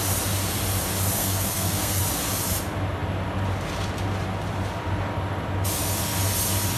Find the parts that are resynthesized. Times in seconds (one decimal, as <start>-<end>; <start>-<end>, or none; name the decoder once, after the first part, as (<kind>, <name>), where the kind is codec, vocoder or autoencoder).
1.2-2.0 (codec, SNAC)